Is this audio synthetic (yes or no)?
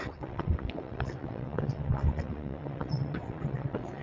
yes